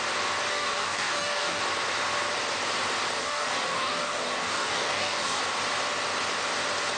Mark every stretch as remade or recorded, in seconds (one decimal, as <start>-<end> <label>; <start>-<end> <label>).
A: 0.0-0.5 recorded; 0.5-1.6 remade; 1.6-3.2 recorded; 3.2-5.4 remade; 5.4-7.0 recorded